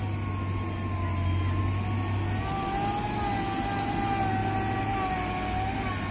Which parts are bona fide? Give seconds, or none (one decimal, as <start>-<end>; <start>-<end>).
0.0-6.1